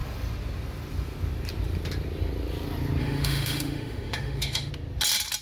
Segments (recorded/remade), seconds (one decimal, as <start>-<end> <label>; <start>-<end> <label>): 0.0-3.0 recorded; 3.0-4.7 remade; 4.7-5.4 recorded